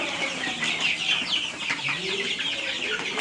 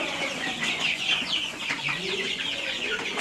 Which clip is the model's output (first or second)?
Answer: second